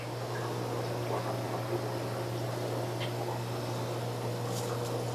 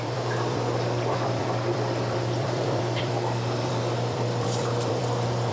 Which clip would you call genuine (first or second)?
first